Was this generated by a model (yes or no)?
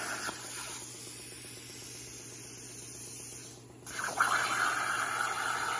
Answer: no